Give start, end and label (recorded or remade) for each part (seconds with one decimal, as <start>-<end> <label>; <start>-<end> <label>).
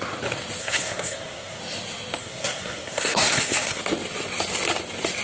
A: 0.0-0.6 recorded; 0.6-1.6 remade; 1.6-2.2 recorded; 2.2-3.8 remade; 3.8-5.2 recorded